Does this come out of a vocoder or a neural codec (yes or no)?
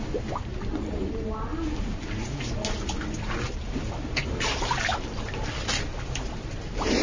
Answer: no